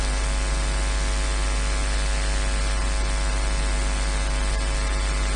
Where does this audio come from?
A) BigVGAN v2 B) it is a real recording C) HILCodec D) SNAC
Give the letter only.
B